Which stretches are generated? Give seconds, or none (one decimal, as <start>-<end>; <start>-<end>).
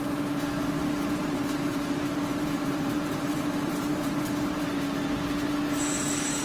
0.8-4.6